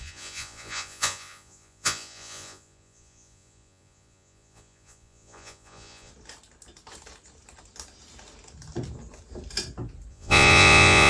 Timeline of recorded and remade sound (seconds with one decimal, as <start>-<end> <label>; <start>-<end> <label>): 0.0-6.1 remade; 6.1-10.1 recorded; 10.1-11.1 remade

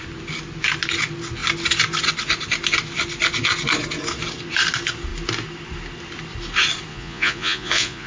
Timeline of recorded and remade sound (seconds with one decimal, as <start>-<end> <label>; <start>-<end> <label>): 0.0-6.9 recorded; 6.9-8.1 remade

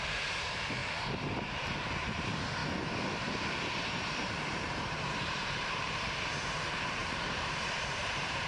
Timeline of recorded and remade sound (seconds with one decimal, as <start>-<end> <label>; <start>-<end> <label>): 0.0-8.5 remade

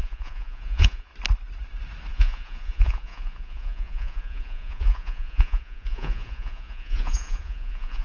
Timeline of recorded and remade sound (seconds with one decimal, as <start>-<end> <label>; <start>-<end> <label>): 0.0-1.1 remade; 1.1-2.1 recorded; 2.1-8.0 remade

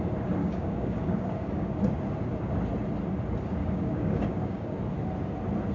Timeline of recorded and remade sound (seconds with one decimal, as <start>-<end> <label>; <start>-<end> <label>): 0.0-0.4 recorded; 0.4-1.7 remade; 1.7-3.6 recorded; 3.6-4.8 remade; 4.8-5.7 recorded

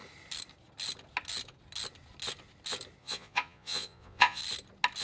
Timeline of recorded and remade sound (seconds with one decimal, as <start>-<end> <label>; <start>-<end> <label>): 0.0-3.0 recorded; 3.0-4.4 remade; 4.4-5.0 recorded

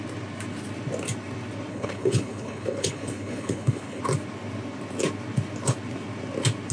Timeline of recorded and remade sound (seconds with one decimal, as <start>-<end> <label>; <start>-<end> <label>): 0.0-1.7 recorded; 1.7-4.0 remade; 4.0-6.7 recorded

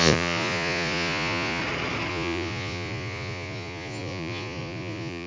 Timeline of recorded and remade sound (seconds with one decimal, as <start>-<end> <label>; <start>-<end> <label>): 0.0-1.6 remade; 1.6-2.1 recorded; 2.1-5.3 remade